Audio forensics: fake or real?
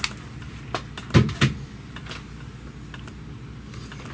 real